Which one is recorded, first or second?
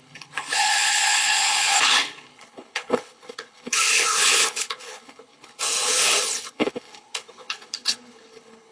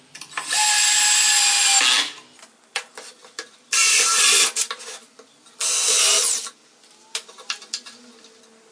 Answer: second